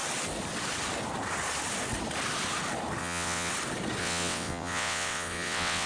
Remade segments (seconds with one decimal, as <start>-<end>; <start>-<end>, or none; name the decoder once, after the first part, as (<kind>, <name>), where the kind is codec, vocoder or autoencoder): 3.0-3.5 (vocoder, WaveNeXt); 4.0-5.9